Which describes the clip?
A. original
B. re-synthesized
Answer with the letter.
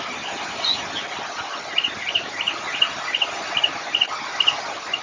A